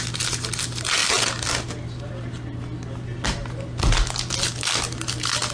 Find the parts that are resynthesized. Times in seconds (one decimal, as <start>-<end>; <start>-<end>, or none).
none